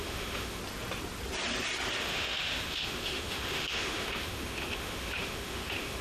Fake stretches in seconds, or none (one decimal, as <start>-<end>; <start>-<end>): 0.0-0.6; 2.0-6.0

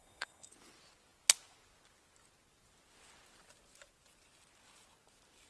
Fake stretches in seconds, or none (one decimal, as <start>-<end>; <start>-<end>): 0.0-0.5

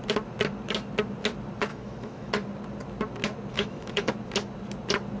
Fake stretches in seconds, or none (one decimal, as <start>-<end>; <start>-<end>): 1.7-2.3; 3.5-4.1

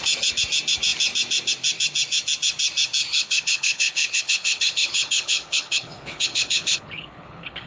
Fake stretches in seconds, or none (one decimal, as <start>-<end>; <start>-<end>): 3.1-7.7